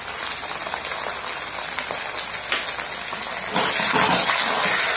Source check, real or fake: real